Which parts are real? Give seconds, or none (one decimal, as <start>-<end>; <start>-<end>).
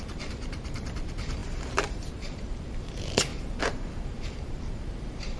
none